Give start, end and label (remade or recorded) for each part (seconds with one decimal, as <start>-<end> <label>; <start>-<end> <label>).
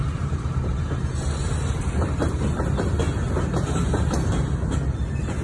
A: 0.0-0.8 remade; 0.8-5.4 recorded